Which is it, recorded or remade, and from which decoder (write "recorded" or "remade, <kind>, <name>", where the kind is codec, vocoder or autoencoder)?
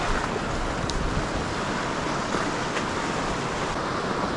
recorded